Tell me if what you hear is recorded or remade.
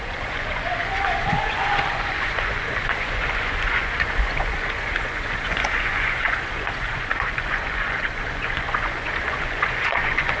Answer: remade